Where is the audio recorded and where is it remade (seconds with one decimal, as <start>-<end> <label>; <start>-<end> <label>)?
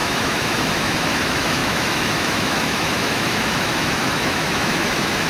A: 0.0-5.3 remade